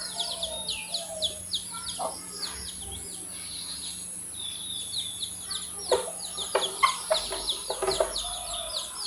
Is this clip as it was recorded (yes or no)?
yes